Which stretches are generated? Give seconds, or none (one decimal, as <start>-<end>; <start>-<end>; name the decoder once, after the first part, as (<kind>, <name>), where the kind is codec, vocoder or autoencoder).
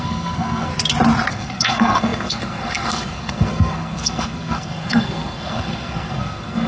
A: 0.0-0.7 (codec, SNAC); 1.3-6.7